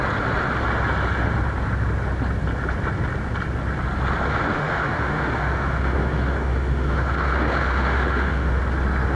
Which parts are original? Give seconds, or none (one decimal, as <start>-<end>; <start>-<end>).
0.0-4.3; 8.6-9.2